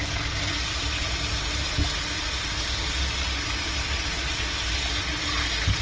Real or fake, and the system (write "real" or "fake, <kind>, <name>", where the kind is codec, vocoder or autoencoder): real